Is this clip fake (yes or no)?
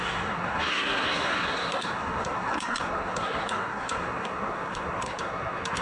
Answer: yes